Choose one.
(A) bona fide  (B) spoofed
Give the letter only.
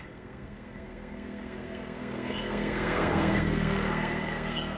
B